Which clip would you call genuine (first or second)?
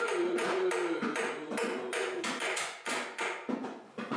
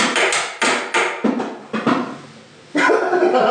second